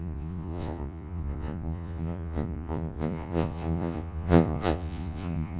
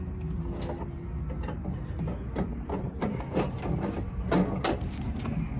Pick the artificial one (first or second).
first